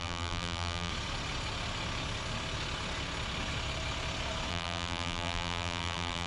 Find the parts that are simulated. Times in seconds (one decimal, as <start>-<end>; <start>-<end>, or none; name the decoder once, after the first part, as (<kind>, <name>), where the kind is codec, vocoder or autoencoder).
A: 0.0-0.9 (vocoder, BigVGAN v2); 4.5-6.3